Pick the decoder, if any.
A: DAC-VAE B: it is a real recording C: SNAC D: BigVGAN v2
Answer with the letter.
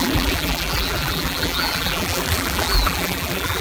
D